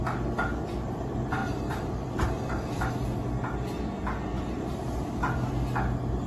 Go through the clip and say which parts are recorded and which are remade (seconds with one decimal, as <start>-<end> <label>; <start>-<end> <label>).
0.0-1.4 recorded; 1.4-2.9 remade; 2.9-4.3 recorded; 4.3-5.5 remade; 5.5-6.3 recorded